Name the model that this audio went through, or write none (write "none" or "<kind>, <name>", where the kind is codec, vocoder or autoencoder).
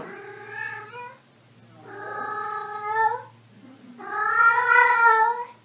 none